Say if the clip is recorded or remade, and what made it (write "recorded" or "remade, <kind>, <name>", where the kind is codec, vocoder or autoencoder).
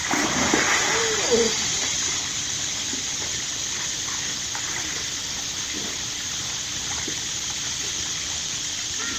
recorded